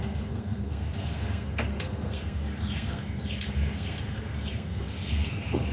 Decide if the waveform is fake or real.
fake